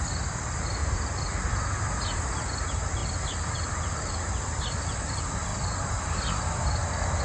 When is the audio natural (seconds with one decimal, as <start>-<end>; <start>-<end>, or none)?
0.0-7.2